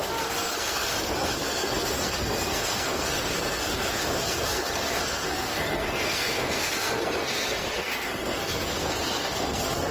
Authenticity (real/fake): fake